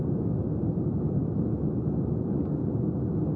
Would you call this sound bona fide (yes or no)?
yes